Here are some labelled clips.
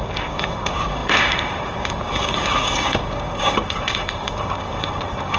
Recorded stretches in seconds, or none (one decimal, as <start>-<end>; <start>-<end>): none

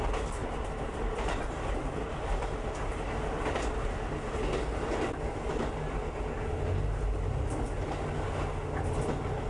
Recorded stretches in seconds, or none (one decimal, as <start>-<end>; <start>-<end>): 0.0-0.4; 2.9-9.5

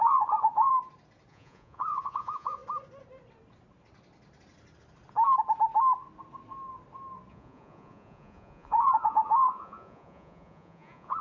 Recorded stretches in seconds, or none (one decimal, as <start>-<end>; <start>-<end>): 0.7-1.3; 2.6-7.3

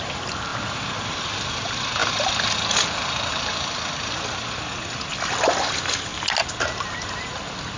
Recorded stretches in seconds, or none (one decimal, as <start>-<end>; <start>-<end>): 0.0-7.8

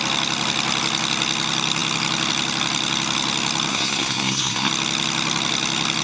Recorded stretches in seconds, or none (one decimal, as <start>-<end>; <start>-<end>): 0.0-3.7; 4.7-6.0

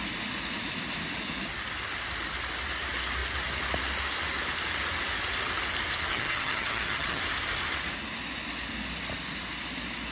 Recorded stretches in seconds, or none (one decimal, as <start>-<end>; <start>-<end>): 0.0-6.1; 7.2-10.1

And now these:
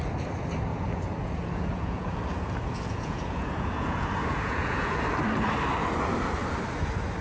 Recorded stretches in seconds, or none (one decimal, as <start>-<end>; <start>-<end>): 0.0-0.7; 5.0-7.2